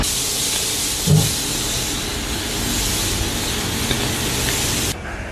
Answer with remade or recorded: recorded